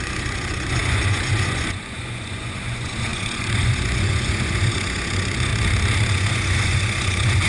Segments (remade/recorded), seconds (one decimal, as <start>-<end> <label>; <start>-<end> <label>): 0.0-5.5 remade; 5.5-6.1 recorded; 6.1-7.5 remade